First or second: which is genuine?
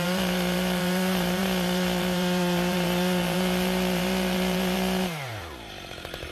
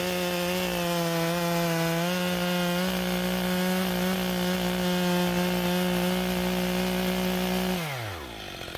second